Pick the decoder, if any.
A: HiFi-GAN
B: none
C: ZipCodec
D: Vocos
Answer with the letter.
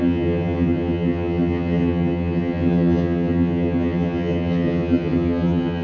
A